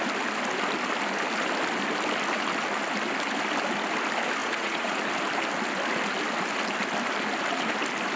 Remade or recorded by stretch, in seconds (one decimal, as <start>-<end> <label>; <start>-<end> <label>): 0.0-4.4 recorded; 4.4-4.9 remade; 4.9-8.2 recorded